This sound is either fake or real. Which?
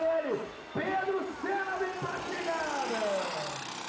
real